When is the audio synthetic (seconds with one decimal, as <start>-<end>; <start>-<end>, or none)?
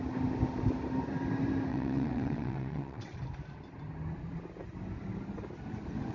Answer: 1.7-3.2